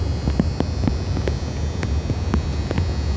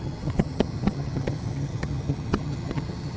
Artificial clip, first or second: second